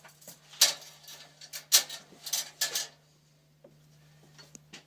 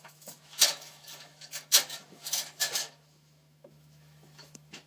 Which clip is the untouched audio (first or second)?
first